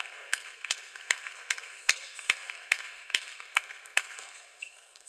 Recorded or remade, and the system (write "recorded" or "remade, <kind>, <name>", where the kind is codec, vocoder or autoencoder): remade, codec, SNAC